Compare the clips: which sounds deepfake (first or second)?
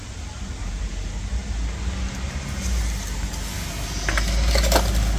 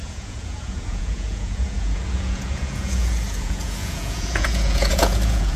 second